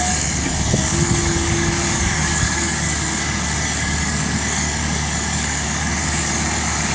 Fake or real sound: fake